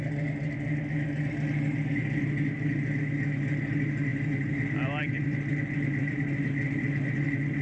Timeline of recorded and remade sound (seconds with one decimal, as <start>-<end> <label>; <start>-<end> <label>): 0.0-4.1 recorded; 4.1-7.6 remade